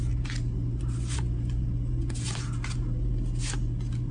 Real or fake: real